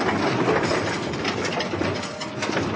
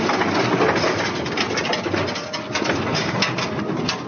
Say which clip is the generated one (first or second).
first